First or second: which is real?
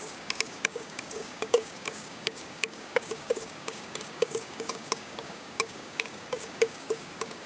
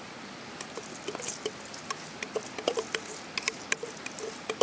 second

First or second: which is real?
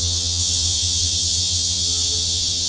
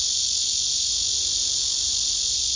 second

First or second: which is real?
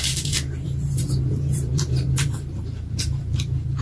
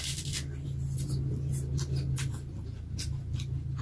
second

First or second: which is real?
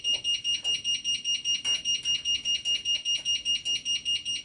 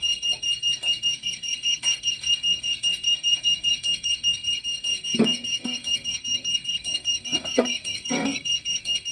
first